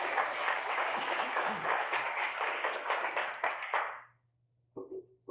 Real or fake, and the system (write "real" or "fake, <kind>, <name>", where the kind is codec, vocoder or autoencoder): fake, codec, DAC